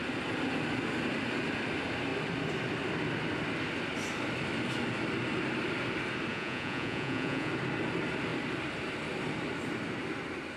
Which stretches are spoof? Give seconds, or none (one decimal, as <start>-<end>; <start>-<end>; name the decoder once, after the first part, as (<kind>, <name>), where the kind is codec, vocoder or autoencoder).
6.3-7.5 (vocoder, Vocos)